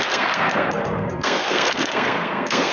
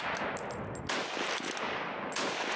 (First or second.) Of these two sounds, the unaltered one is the second